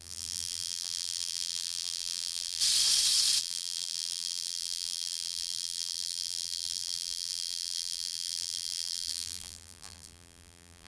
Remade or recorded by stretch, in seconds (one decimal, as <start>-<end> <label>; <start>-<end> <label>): 0.0-2.6 remade; 2.6-3.4 recorded; 3.4-10.9 remade